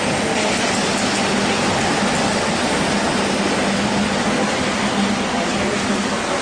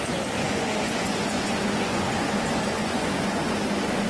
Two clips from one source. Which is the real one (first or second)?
first